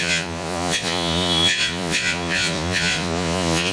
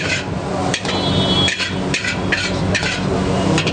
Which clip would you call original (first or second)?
second